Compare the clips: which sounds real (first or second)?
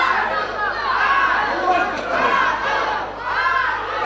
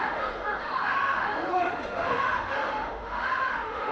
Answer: first